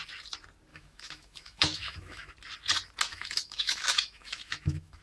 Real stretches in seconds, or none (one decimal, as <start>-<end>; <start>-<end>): 0.0-0.7; 2.3-3.1